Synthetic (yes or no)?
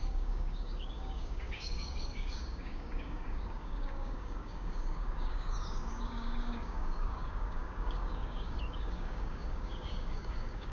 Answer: yes